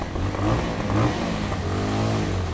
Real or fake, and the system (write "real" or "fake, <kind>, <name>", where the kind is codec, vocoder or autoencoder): real